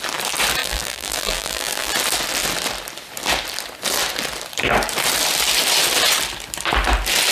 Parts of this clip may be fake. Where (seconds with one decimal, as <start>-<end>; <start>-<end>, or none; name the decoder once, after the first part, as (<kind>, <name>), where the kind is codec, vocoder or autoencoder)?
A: 0.6-1.9 (vocoder, BigVGAN v2)